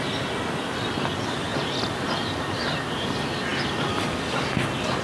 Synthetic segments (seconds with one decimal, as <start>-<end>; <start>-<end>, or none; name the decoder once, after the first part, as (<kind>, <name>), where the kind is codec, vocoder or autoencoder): none